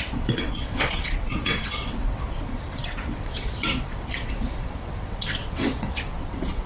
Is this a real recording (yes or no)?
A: no